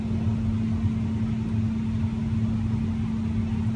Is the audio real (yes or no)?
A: yes